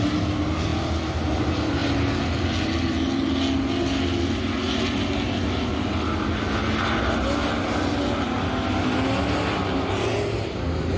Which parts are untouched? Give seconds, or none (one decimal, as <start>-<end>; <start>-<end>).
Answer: 0.0-11.0

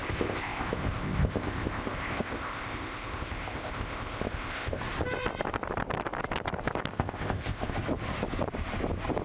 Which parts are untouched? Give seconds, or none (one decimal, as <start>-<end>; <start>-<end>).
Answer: 4.8-6.9; 7.7-9.2

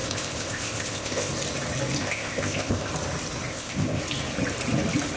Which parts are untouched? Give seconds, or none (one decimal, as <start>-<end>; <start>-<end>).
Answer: 1.3-2.0; 2.9-3.5; 4.0-5.2

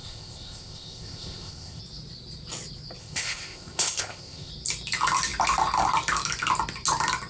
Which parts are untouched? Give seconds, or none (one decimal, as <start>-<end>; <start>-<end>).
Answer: 1.8-3.0; 4.5-7.3